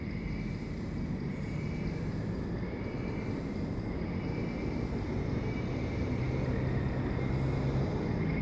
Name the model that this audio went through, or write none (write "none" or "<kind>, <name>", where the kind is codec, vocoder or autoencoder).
none